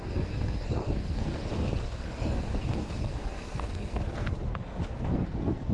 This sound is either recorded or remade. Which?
remade